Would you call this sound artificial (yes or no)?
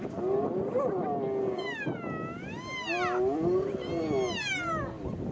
no